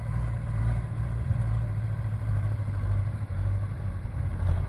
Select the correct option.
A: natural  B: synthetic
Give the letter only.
B